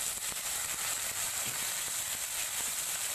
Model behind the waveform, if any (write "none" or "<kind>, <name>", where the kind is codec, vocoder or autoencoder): vocoder, BigVGAN v2